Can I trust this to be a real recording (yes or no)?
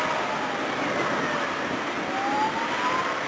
yes